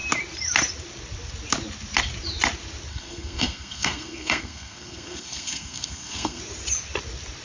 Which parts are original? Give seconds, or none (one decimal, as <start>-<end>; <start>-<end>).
0.0-2.9; 6.4-7.4